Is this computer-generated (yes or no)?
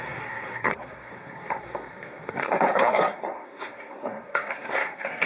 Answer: yes